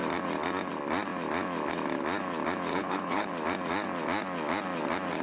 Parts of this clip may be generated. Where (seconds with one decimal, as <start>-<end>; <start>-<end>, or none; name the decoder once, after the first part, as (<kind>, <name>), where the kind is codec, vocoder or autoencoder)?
2.7-3.3 (codec, HILCodec)